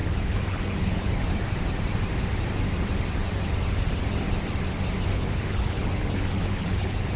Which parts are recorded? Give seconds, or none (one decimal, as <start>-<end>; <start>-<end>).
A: 1.3-5.1